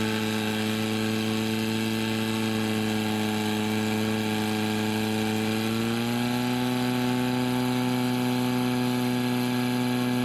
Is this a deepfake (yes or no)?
no